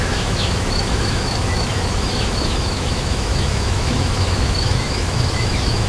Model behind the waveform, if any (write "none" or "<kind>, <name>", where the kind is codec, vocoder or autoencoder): autoencoder, DAC-VAE